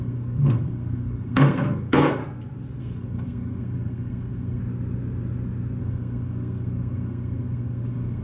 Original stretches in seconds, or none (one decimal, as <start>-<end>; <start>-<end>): 2.2-2.8; 4.6-5.8